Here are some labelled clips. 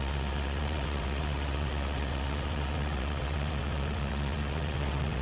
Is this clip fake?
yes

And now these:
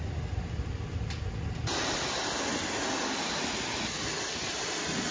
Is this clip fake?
no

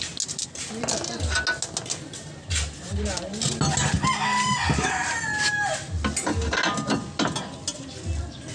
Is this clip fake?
no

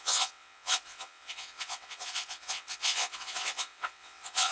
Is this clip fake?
yes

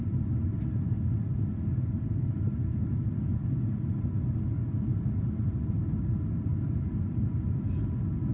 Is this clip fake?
no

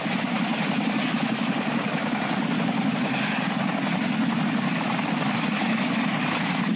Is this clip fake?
no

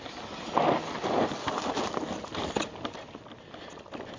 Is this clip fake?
no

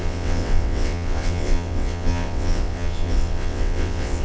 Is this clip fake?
yes